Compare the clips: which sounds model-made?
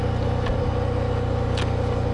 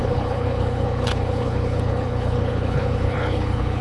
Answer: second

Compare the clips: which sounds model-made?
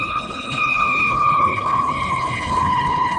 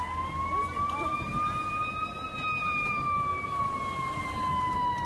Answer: first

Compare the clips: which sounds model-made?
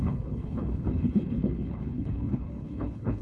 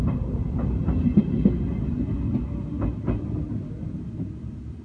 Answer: first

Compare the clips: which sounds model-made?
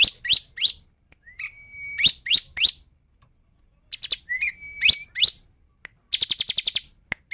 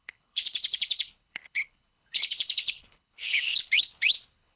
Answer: second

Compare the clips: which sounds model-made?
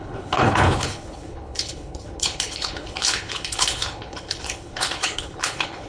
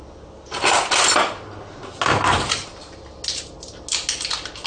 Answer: first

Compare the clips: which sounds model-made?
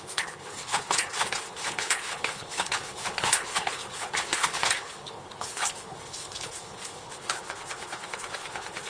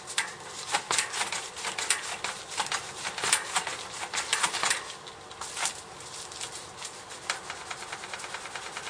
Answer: first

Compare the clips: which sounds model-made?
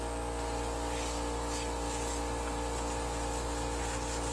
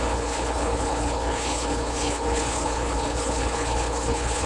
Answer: second